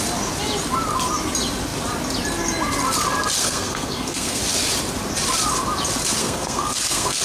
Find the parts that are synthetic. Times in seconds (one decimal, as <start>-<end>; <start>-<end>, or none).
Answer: 3.4-4.4; 6.2-7.2